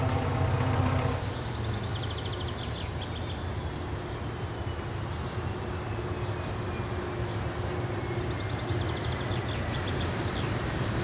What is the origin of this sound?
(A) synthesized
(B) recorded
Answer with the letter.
B